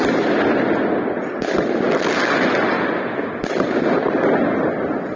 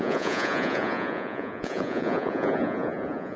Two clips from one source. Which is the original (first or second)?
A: first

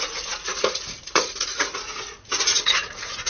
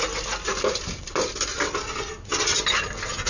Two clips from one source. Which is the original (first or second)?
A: second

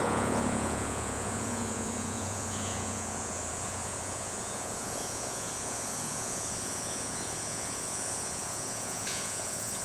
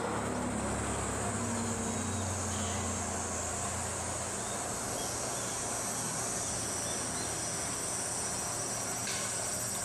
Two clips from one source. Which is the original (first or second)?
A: second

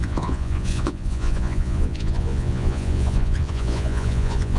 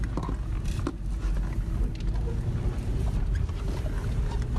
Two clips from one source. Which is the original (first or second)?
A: second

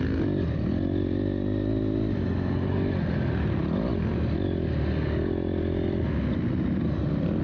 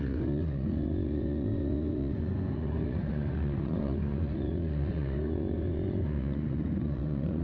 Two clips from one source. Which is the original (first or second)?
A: first